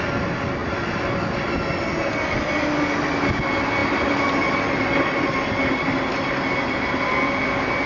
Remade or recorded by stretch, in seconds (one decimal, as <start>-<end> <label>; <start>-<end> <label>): 0.0-7.9 recorded